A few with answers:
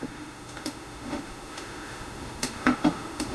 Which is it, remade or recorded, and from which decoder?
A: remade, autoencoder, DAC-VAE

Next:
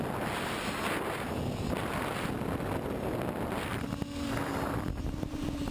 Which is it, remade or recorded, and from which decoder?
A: recorded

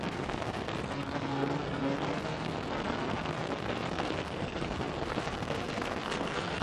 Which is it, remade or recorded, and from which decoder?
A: remade, codec, SNAC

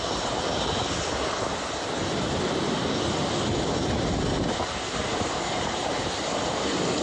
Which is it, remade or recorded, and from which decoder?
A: recorded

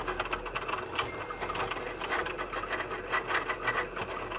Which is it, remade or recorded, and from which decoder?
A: recorded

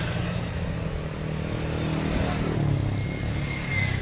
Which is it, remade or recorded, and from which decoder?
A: recorded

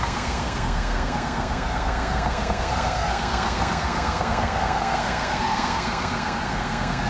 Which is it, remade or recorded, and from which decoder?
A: remade, codec, SNAC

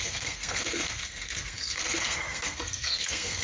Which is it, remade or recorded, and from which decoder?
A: remade, codec, SNAC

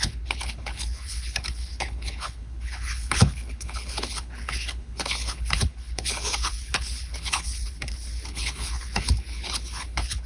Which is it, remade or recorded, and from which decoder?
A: remade, codec, HILCodec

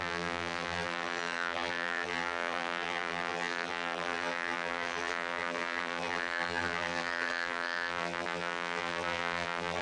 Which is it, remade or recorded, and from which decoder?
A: remade, vocoder, BigVGAN v2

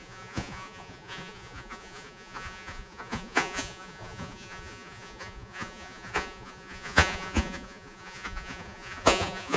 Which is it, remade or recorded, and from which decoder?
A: remade, vocoder, Vocos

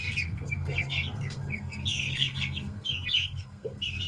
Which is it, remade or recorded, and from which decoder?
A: remade, codec, SNAC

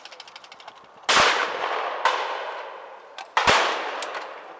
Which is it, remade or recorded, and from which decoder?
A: recorded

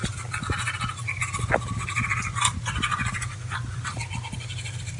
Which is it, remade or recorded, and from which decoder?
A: recorded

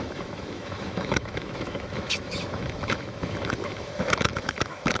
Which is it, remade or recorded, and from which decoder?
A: remade, autoencoder, DAC-VAE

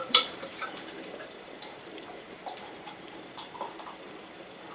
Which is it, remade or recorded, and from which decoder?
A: remade, vocoder, BigVGAN v2